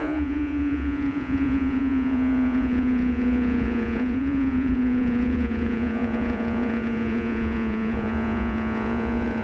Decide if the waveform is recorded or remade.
remade